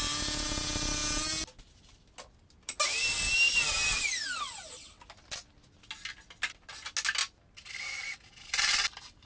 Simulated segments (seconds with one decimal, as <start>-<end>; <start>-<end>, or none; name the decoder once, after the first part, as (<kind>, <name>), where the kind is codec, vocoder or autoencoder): none